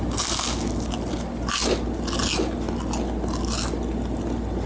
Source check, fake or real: real